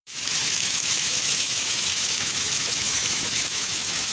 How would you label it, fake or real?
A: fake